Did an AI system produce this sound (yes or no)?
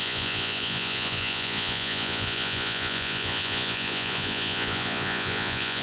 yes